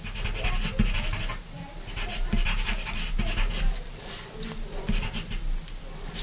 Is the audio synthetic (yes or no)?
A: no